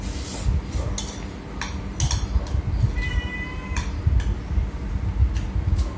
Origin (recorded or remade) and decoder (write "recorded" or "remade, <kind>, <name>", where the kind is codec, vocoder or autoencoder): recorded